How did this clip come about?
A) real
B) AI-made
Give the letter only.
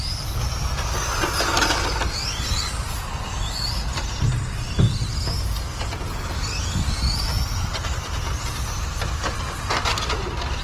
A